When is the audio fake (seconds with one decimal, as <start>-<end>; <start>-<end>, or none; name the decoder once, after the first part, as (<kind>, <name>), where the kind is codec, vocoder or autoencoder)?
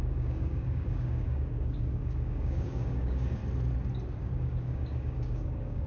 0.0-3.4 (codec, DAC); 4.2-5.9